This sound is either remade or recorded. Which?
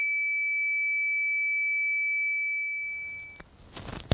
recorded